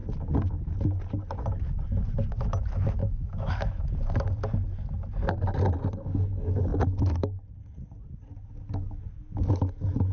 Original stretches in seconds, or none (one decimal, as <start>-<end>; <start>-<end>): 0.0-3.0; 3.9-10.1